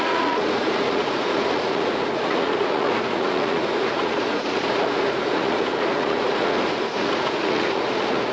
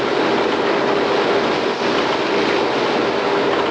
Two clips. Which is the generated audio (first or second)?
first